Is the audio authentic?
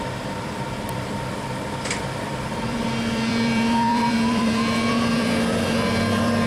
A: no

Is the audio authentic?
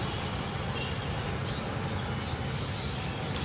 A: yes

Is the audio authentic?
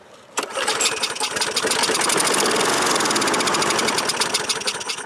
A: no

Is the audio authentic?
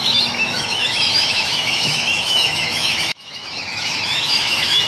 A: no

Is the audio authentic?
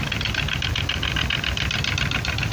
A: yes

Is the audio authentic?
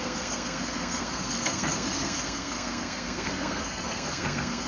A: no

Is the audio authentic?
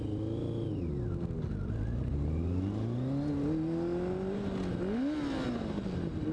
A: yes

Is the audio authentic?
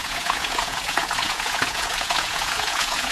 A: no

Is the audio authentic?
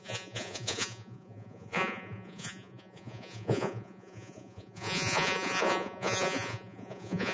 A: no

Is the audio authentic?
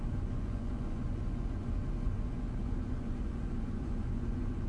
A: no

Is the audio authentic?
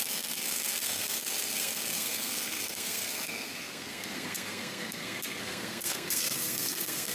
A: no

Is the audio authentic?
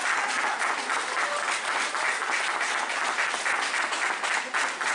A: yes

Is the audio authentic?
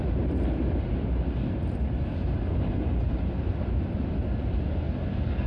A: yes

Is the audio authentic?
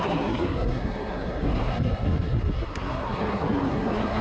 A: no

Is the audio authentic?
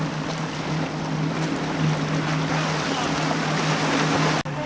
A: yes